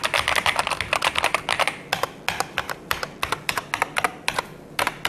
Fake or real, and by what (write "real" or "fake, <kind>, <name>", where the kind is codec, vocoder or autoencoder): real